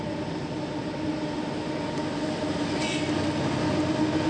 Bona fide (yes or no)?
yes